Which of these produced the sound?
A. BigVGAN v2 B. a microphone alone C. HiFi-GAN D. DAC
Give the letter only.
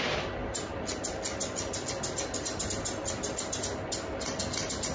B